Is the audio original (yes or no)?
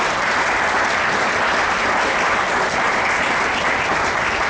yes